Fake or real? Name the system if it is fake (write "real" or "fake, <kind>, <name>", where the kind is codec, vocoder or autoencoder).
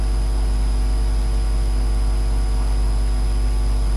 real